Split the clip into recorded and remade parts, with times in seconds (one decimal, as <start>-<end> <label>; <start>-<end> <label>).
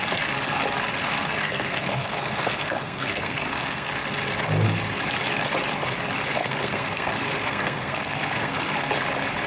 0.0-1.0 recorded; 1.0-3.9 remade; 3.9-6.4 recorded; 6.4-8.9 remade; 8.9-9.5 recorded